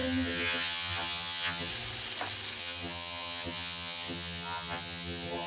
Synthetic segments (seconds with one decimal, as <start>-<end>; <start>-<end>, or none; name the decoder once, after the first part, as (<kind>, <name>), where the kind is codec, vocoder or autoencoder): 0.0-1.7 (vocoder, HiFi-GAN); 2.6-5.5